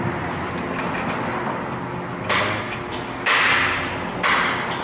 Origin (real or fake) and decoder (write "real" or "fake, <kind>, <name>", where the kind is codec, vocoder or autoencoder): real